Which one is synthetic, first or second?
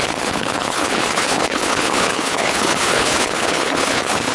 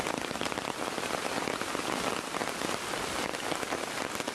first